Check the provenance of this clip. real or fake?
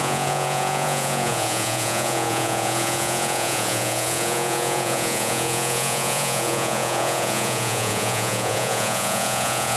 fake